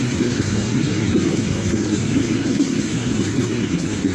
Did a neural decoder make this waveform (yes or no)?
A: yes